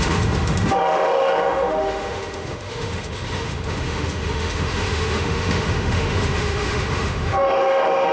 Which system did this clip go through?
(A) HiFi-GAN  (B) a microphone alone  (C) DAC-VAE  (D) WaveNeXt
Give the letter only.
C